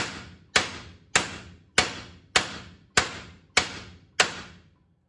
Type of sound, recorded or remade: recorded